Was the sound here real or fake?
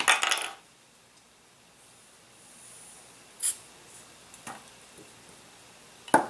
real